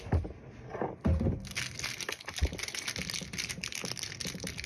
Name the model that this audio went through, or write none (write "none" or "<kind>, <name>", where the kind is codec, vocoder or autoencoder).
none